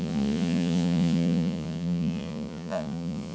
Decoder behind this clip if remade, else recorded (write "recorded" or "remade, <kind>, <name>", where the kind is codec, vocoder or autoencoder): remade, vocoder, Vocos